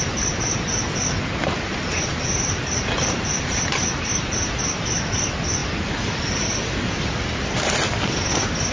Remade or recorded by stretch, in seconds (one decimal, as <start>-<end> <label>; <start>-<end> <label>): 0.0-1.7 recorded; 1.7-4.5 remade; 4.5-5.6 recorded; 5.6-6.9 remade; 6.9-8.7 recorded